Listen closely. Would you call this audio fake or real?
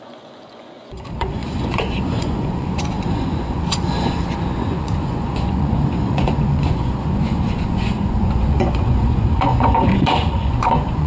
fake